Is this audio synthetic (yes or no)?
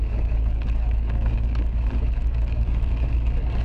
yes